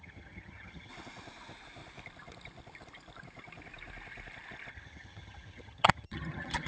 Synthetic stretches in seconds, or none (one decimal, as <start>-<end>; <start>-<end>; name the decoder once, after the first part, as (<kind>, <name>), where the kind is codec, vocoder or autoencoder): 0.0-0.9 (vocoder, HiFi-GAN); 4.7-6.7